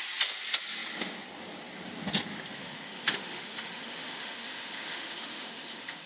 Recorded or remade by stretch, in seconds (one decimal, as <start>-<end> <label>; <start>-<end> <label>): 0.0-2.6 recorded; 2.6-6.1 remade